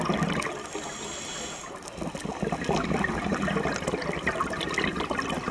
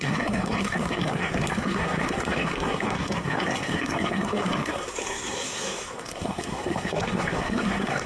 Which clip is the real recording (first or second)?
first